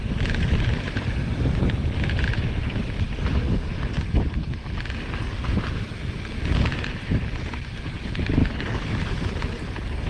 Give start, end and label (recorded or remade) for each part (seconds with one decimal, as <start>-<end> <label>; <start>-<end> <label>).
0.0-8.4 recorded; 8.4-9.0 remade; 9.0-10.1 recorded